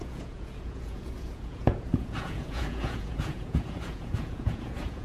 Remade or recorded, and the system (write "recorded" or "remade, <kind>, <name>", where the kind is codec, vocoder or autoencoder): remade, vocoder, Vocos